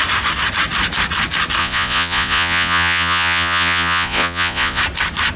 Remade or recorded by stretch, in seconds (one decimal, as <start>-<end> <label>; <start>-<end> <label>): 0.0-1.6 recorded; 1.6-4.8 remade; 4.8-5.4 recorded